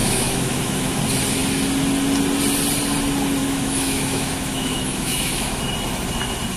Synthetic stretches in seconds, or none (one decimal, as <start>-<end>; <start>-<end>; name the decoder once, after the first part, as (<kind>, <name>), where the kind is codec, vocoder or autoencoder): 0.0-1.0 (autoencoder, DAC-VAE); 3.4-5.6